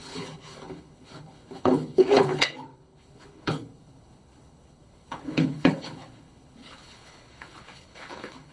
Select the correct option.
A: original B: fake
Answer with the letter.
B